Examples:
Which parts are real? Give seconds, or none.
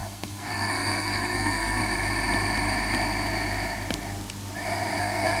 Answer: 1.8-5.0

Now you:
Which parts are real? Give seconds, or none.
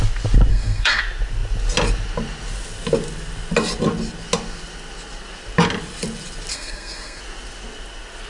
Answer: 0.0-0.5; 1.0-6.5; 7.2-8.3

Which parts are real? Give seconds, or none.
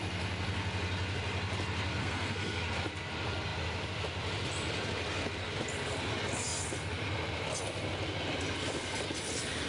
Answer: 0.0-2.0; 2.6-9.7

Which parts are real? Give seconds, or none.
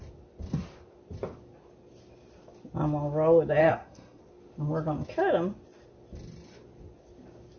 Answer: 0.0-3.6; 4.2-7.6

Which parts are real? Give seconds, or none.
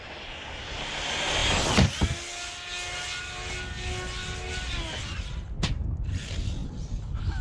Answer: 0.0-7.4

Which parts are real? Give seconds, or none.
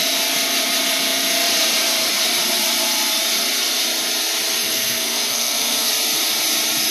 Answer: 0.0-4.6; 5.9-6.9